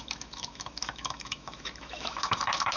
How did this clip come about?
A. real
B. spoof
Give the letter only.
B